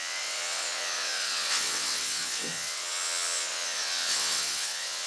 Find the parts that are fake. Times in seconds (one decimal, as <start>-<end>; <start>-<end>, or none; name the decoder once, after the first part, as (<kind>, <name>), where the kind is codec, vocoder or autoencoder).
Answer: 0.0-5.1 (vocoder, WaveNeXt)